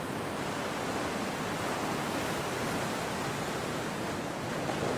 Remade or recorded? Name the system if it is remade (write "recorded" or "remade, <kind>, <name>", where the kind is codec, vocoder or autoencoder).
recorded